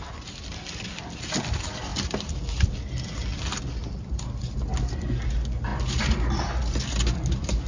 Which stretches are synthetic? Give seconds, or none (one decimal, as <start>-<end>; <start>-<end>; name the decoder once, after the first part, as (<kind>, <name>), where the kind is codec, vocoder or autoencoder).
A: none